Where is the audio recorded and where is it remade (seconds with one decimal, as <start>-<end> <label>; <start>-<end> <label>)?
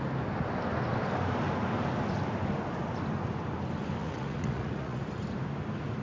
0.0-4.0 recorded; 4.0-5.0 remade; 5.0-6.0 recorded